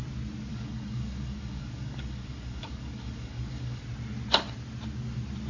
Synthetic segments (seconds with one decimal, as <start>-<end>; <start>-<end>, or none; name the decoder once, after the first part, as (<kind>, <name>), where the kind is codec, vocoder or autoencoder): 0.5-3.8 (codec, DAC)